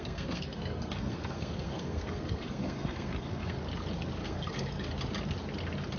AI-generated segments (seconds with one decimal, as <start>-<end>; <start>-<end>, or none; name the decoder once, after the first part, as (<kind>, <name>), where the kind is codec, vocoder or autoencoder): 0.0-3.6 (codec, SNAC); 4.2-4.9